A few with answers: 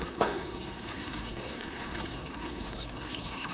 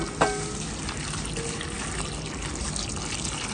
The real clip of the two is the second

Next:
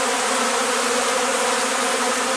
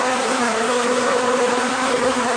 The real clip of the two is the first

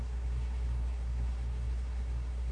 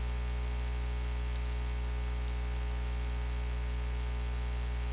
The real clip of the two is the second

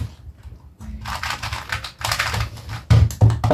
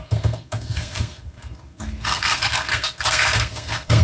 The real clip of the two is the first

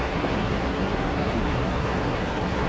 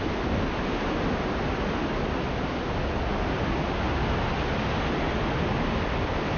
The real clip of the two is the second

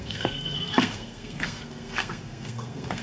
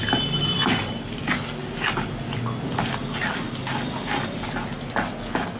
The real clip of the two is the second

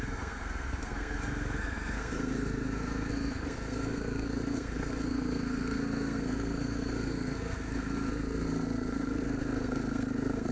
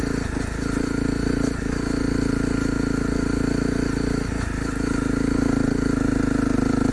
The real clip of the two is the second